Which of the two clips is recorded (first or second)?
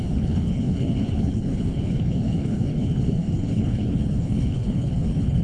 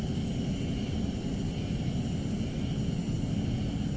second